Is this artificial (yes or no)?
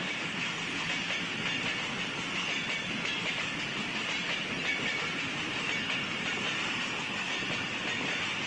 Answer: no